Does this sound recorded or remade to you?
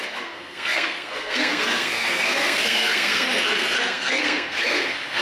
remade